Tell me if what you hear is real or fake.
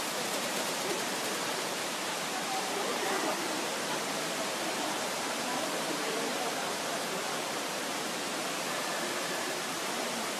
fake